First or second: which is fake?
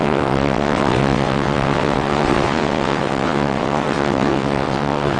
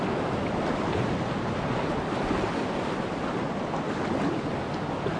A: first